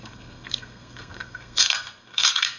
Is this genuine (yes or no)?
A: no